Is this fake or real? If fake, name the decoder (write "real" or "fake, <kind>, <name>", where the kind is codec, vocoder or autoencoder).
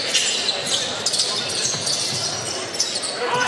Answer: real